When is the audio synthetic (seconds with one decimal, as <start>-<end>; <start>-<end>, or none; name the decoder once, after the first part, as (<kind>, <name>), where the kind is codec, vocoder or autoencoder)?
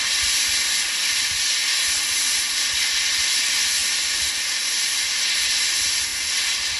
none